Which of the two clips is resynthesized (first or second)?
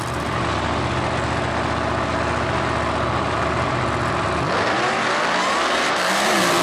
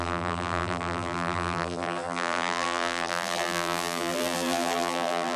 second